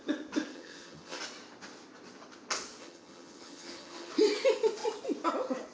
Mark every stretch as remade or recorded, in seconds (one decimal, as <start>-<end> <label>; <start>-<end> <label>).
0.0-0.5 recorded; 0.5-1.2 remade; 1.2-2.8 recorded; 2.8-4.1 remade; 4.1-5.7 recorded